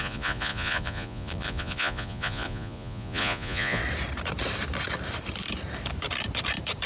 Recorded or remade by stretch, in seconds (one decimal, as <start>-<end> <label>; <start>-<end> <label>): 0.0-3.8 remade; 3.8-6.9 recorded